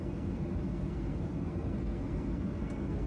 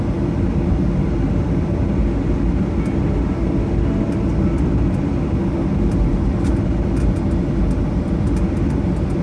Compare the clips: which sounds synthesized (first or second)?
first